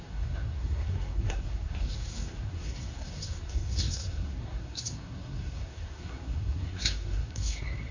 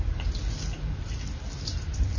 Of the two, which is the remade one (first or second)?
first